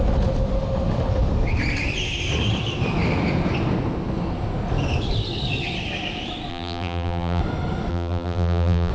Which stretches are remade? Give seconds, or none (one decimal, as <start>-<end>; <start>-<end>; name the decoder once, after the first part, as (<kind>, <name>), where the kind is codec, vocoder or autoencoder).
6.5-7.4 (vocoder, BigVGAN v2); 7.9-8.9